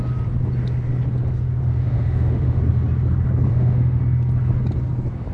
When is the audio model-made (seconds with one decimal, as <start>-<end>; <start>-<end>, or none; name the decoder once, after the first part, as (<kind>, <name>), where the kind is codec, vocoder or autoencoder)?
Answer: 1.8-2.6 (autoencoder, DAC-VAE); 3.5-4.0